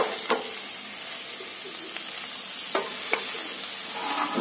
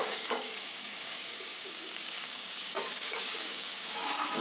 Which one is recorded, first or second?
first